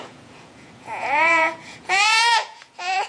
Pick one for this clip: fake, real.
fake